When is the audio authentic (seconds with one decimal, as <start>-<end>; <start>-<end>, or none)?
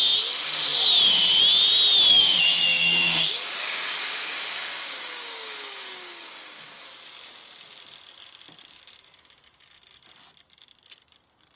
0.0-2.1; 6.9-11.6